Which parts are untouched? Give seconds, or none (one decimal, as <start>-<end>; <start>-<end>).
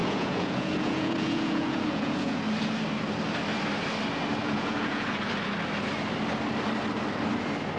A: 2.4-4.4; 5.2-7.8